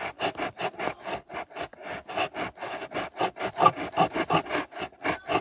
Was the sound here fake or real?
real